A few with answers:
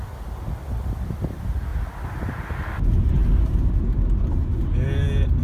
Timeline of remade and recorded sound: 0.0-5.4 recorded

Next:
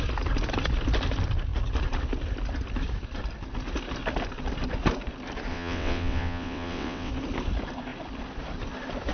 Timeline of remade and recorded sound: 0.0-5.5 recorded; 5.5-7.1 remade; 7.1-9.1 recorded

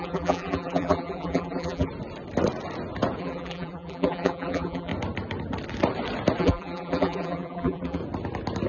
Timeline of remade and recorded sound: 0.0-1.9 remade; 1.9-3.2 recorded; 3.2-4.9 remade; 4.9-6.4 recorded; 6.4-8.0 remade; 8.0-8.7 recorded

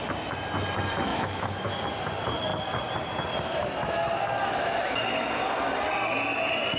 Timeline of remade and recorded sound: 0.0-1.1 recorded; 1.1-1.7 remade; 1.7-6.8 recorded

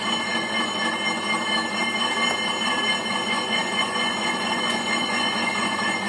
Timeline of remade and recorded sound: 0.0-0.8 remade; 0.8-3.1 recorded; 3.1-6.1 remade

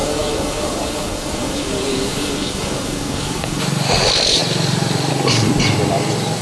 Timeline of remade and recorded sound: 0.0-3.6 remade; 3.6-6.4 recorded

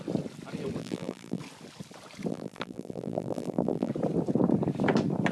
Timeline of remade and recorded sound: 0.0-0.8 recorded; 0.8-1.4 remade; 1.4-2.3 recorded; 2.3-3.9 remade; 3.9-5.3 recorded

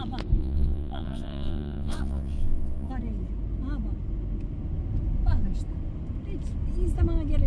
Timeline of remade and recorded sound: 0.0-0.4 recorded; 0.4-2.9 remade; 2.9-7.5 recorded